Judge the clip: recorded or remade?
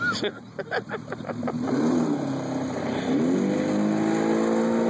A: recorded